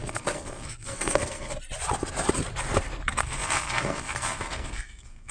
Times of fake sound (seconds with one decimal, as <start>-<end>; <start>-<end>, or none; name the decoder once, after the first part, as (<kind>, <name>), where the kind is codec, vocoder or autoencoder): 0.0-1.5 (codec, SNAC); 3.2-5.3